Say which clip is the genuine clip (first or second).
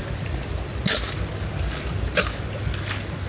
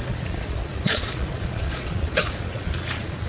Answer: first